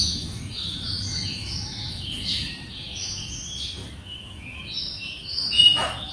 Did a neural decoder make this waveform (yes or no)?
yes